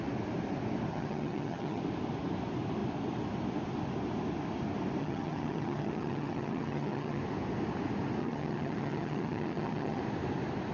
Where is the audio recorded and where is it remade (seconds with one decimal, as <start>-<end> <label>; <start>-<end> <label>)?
0.0-0.9 recorded; 0.9-1.8 remade; 1.8-5.0 recorded; 5.0-7.2 remade; 7.2-8.2 recorded; 8.2-10.0 remade; 10.0-10.7 recorded